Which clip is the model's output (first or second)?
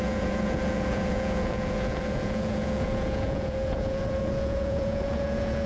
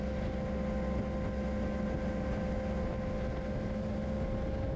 first